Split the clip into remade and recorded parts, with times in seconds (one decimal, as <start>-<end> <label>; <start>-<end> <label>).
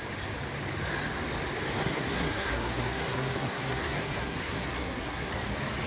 0.0-1.8 recorded; 1.8-5.3 remade; 5.3-5.9 recorded